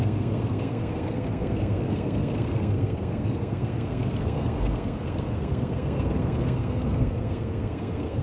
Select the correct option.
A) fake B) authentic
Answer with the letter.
A